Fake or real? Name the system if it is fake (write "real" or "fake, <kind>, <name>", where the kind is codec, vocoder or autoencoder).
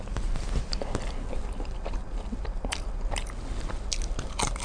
real